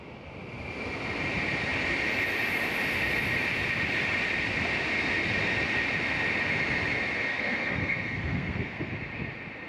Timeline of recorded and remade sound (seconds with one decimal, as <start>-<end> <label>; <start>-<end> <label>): 0.0-7.3 recorded; 7.3-8.9 remade; 8.9-9.7 recorded